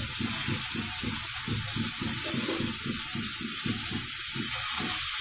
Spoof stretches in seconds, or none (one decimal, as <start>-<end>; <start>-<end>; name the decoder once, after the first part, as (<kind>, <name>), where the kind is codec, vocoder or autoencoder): none